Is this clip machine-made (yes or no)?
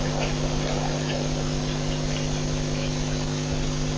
no